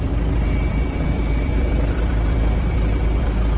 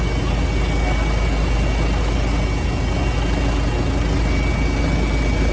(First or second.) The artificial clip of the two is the first